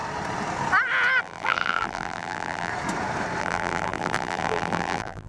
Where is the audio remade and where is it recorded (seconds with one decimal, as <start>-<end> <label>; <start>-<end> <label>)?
0.0-1.2 recorded; 1.2-2.7 remade; 2.7-3.4 recorded; 3.4-5.3 remade